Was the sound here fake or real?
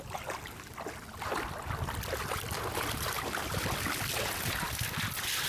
real